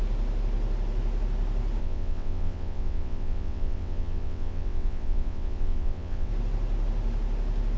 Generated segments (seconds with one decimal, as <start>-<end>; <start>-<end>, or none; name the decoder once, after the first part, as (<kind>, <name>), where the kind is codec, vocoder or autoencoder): 1.8-6.3 (vocoder, WaveNeXt)